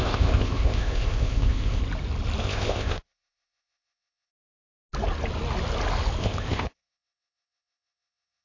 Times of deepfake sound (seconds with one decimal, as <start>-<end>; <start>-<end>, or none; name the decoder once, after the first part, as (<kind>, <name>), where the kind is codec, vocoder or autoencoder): 0.0-1.8 (codec, ZipCodec); 2.4-4.3; 6.2-8.4